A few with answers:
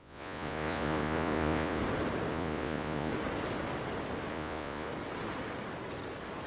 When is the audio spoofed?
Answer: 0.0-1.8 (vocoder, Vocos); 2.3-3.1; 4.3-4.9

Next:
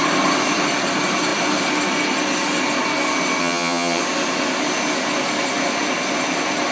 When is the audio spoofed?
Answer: 3.4-4.0 (vocoder, HiFi-GAN)

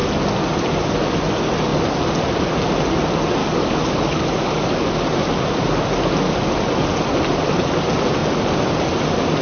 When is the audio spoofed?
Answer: 3.4-4.9 (codec, DAC)

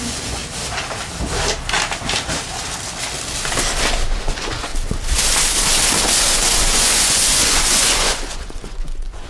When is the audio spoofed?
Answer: 0.0-0.4 (vocoder, Vocos); 4.2-4.7; 6.1-9.3